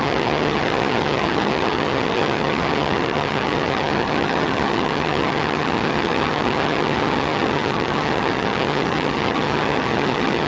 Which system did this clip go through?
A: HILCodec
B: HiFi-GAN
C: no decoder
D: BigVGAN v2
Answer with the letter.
B